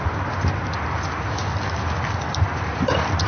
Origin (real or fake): real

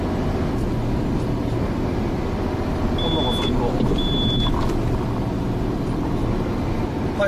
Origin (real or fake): real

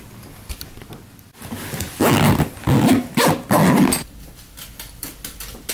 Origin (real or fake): real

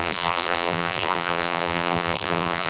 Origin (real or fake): fake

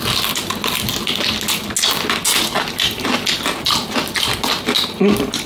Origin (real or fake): real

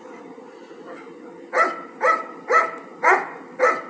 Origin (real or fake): real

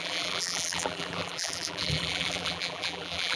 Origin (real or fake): fake